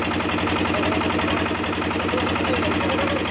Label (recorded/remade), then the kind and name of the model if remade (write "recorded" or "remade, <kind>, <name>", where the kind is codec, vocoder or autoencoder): recorded